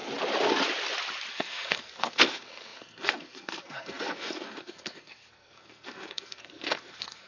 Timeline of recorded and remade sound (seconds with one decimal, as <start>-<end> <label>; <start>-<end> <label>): 0.0-1.3 recorded; 1.3-7.3 remade